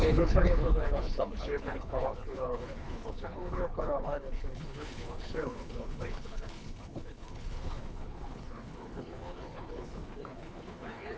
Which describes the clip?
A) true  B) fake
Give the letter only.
B